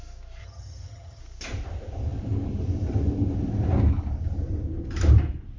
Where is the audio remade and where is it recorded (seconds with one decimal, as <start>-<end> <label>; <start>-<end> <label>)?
0.0-0.4 recorded; 0.4-1.2 remade; 1.2-5.6 recorded